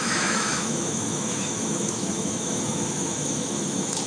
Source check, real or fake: fake